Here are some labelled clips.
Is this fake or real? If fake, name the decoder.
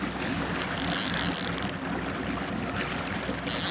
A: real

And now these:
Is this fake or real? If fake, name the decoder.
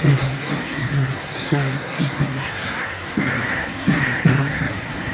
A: fake, codec, SNAC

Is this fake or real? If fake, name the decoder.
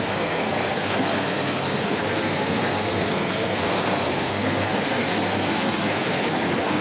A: fake, codec, SNAC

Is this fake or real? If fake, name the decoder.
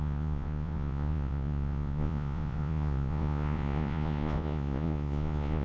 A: fake, vocoder, Vocos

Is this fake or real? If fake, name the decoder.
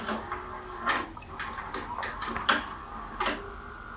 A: real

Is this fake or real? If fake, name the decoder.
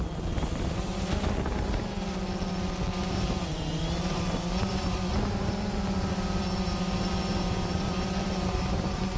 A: fake, vocoder, BigVGAN v2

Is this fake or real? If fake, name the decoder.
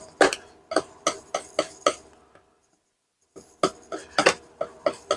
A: real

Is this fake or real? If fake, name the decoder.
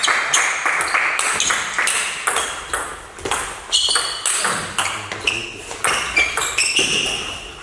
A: real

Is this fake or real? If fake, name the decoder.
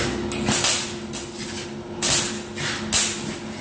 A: real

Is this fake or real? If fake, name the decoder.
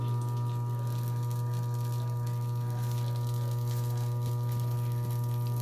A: real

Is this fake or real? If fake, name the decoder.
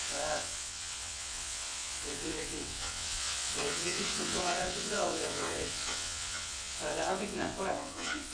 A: fake, vocoder, WaveNeXt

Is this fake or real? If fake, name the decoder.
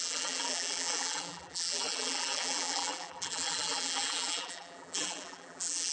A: fake, vocoder, BigVGAN v2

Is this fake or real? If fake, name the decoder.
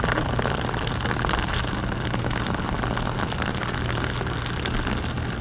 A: real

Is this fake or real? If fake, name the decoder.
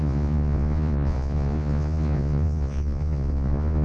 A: fake, vocoder, Vocos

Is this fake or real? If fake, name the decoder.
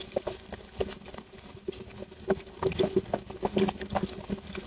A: real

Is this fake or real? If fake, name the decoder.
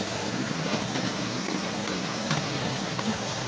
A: fake, codec, SNAC